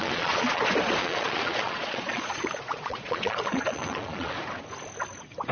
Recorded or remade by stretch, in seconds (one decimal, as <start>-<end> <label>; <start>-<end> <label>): 0.0-0.6 remade; 0.6-1.0 recorded; 1.0-4.3 remade; 4.3-5.5 recorded